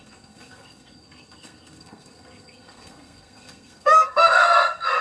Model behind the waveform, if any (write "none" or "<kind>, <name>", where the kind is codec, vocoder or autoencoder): codec, SNAC